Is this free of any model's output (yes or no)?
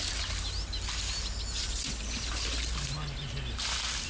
yes